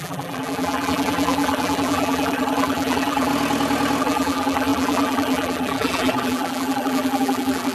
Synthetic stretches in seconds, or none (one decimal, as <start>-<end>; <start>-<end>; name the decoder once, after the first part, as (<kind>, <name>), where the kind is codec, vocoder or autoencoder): 0.0-3.3 (vocoder, BigVGAN v2); 4.0-7.7